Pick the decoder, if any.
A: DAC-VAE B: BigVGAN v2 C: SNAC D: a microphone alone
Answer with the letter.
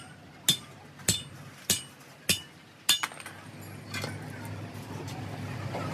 D